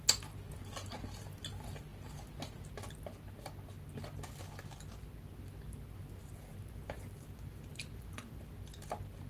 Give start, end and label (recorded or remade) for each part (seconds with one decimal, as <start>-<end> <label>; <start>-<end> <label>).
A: 0.0-9.3 recorded